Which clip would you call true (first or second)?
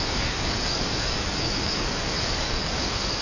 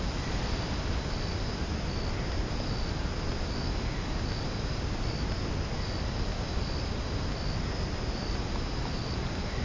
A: second